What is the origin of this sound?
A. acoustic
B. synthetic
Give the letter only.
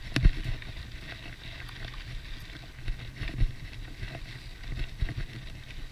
A